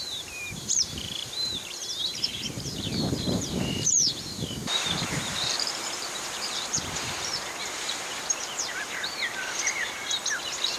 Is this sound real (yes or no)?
no